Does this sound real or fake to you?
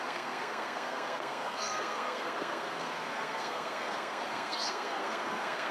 fake